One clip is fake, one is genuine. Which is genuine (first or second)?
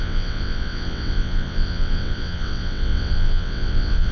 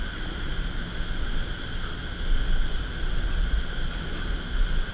second